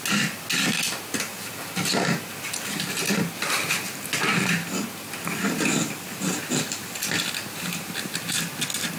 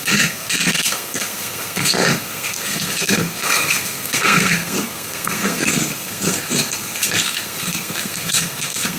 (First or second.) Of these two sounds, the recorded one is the first